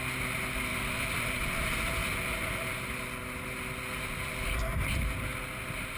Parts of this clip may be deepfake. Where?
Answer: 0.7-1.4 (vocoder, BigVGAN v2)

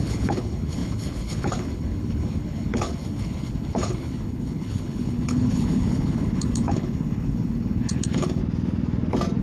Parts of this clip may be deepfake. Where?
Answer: 0.0-8.4 (codec, HILCodec)

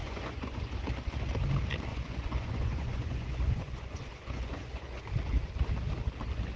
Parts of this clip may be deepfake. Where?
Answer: 0.0-0.7 (vocoder, Vocos); 1.9-5.0

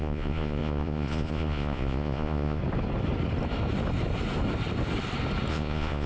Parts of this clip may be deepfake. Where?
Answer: 0.0-2.6 (vocoder, Vocos); 5.5-6.1

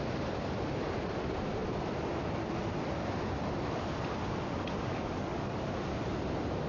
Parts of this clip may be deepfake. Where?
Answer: 4.9-5.7 (codec, DAC)